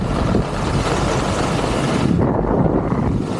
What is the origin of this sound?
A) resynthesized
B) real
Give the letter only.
B